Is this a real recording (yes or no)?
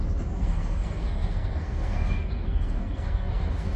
no